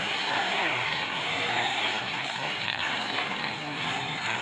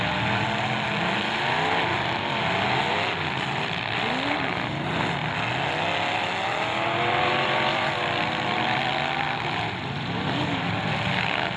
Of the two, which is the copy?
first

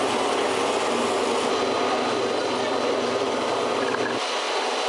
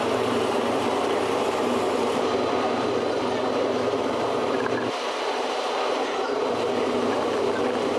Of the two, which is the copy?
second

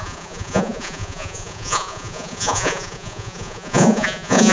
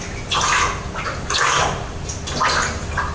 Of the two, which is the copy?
first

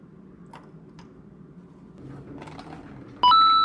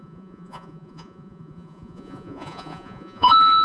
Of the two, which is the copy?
second